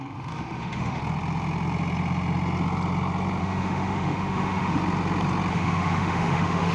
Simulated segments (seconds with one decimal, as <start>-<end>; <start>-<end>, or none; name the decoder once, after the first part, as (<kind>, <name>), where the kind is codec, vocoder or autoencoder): 0.0-1.0 (autoencoder, DAC-VAE); 3.4-4.8; 5.5-6.7

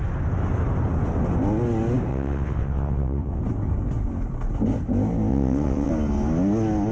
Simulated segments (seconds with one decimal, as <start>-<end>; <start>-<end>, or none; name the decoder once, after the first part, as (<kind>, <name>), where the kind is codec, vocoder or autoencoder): 2.1-3.4 (vocoder, WaveNeXt); 5.3-5.9

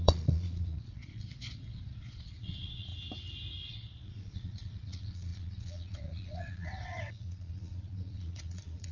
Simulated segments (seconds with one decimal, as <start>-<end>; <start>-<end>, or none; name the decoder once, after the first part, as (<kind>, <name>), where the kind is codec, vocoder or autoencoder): 0.0-2.9 (vocoder, Vocos); 3.7-8.9

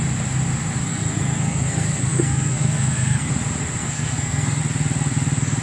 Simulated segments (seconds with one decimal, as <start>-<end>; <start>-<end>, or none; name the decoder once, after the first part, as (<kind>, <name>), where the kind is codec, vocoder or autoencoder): 0.8-3.3 (codec, SNAC); 3.8-4.6

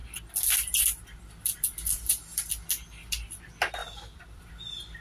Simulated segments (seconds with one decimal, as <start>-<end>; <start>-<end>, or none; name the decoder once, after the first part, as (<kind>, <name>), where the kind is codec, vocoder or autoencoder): 0.0-2.5 (vocoder, BigVGAN v2); 3.8-4.5

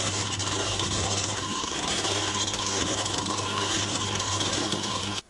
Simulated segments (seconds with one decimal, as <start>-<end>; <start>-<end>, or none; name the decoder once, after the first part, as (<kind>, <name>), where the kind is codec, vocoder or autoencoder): 0.0-5.3 (codec, SNAC)